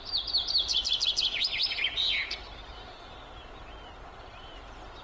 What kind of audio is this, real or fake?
real